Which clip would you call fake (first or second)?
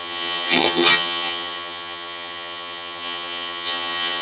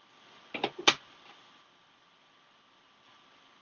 first